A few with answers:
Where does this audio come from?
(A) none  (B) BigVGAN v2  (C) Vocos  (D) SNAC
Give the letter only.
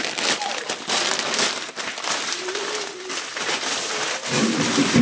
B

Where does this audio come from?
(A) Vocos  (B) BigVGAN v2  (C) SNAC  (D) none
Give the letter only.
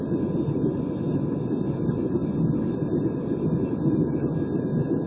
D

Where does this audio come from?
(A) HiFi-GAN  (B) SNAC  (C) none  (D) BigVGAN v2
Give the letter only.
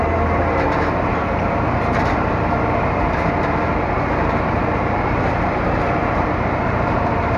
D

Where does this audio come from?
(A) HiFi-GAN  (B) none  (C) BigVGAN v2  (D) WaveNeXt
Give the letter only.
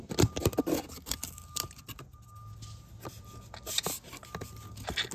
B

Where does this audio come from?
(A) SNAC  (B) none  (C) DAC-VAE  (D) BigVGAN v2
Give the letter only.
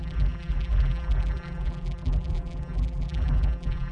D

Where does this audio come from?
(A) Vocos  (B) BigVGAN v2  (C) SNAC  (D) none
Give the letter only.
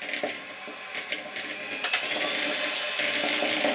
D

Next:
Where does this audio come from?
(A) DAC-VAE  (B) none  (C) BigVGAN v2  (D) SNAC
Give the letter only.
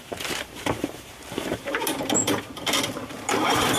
C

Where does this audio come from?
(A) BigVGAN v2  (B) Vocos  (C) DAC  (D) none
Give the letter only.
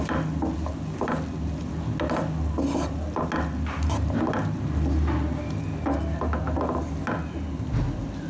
D